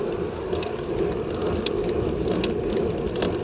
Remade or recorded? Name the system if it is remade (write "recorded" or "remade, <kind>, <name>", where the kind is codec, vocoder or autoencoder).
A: recorded